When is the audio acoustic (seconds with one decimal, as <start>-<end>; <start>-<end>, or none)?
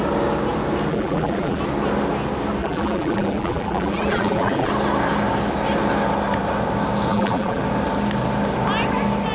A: 0.0-0.9; 1.6-2.6; 4.7-7.1; 7.6-9.3